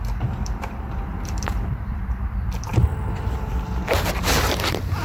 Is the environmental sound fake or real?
fake